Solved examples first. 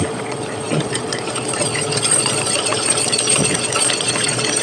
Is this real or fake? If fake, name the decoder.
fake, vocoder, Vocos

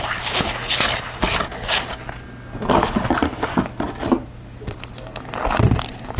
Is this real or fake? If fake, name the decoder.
real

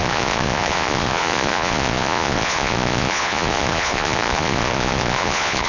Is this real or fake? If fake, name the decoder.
fake, vocoder, Vocos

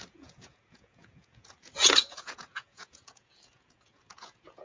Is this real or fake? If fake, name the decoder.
fake, vocoder, Vocos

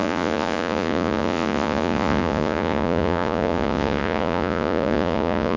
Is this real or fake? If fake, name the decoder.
fake, vocoder, Vocos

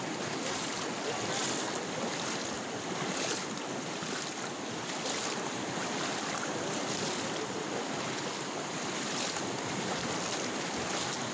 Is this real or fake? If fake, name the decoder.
real